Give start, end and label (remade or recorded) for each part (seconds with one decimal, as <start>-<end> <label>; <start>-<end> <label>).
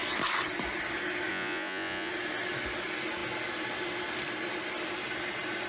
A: 0.0-1.3 recorded; 1.3-2.1 remade; 2.1-5.7 recorded